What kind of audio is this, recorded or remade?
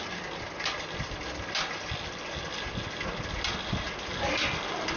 recorded